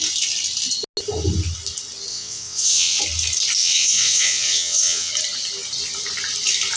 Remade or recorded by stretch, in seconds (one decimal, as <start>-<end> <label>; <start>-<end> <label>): 0.0-2.1 recorded; 2.1-3.0 remade; 3.0-3.6 recorded; 3.6-5.1 remade; 5.1-6.8 recorded